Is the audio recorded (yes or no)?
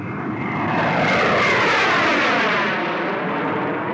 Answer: yes